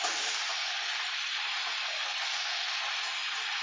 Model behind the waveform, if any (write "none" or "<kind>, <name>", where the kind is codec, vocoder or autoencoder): none